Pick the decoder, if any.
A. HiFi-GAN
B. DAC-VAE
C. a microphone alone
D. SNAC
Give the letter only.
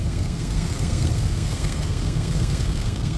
D